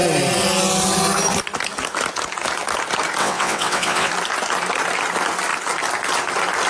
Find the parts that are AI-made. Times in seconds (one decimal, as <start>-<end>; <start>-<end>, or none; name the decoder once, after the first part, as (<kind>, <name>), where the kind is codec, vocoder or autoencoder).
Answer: 3.2-4.1 (vocoder, WaveNeXt)